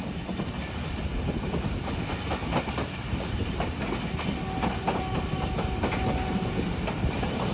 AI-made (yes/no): no